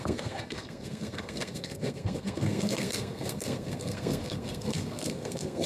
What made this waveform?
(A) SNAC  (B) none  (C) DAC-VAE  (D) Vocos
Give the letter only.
A